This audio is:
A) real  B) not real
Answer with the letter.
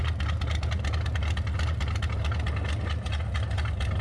A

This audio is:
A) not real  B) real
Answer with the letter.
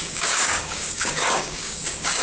A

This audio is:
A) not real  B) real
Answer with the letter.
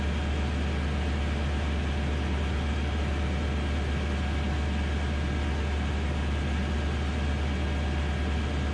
B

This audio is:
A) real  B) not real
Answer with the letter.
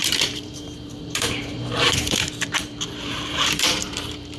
B